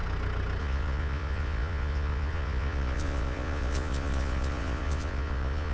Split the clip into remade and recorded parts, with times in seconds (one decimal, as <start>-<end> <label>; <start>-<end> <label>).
0.0-0.6 recorded; 0.6-5.7 remade